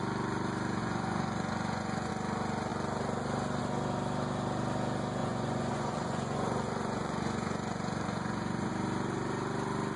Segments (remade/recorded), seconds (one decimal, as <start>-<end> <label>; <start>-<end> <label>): 0.0-0.8 recorded; 0.8-2.1 remade; 2.1-5.2 recorded; 5.2-8.7 remade; 8.7-10.0 recorded